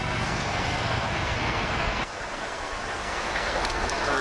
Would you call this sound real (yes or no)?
no